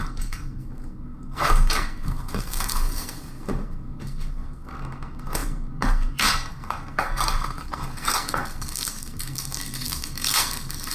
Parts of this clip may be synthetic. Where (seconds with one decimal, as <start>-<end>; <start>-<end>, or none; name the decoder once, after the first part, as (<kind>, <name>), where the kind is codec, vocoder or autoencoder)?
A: 0.0-10.9 (codec, SNAC)